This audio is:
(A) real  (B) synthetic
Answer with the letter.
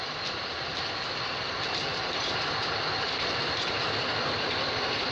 A